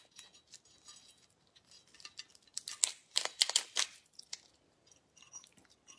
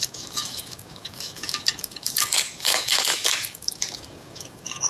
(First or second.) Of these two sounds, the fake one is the second